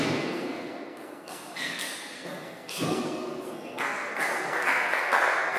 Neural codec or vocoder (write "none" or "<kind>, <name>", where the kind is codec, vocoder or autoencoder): codec, SNAC